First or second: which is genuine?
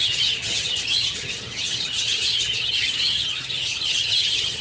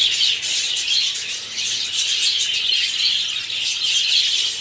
second